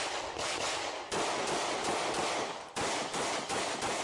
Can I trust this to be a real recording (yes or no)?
no